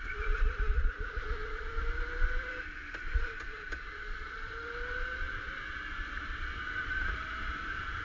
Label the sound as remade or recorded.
recorded